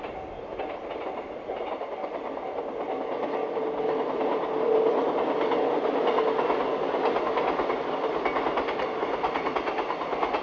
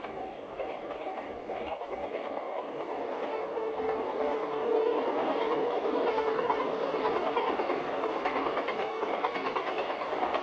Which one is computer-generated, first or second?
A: second